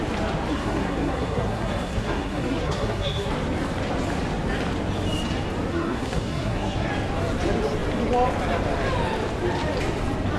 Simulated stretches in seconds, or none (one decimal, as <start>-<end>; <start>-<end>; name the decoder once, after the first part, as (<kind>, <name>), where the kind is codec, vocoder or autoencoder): 0.5-3.3 (codec, SNAC); 5.7-6.9